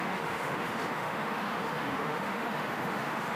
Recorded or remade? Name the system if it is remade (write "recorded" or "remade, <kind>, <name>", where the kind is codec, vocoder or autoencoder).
remade, autoencoder, DAC-VAE